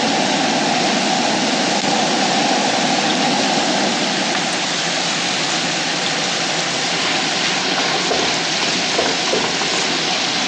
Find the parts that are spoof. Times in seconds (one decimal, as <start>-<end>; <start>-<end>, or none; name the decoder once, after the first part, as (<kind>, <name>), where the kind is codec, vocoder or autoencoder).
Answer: none